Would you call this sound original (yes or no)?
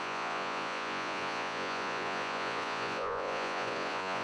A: no